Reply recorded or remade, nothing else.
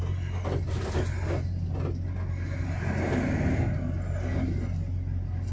recorded